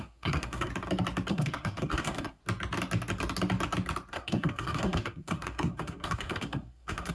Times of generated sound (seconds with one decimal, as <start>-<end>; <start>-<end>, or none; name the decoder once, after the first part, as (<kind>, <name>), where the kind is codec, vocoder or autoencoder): 0.0-0.7 (codec, SNAC); 1.3-2.4; 4.1-7.1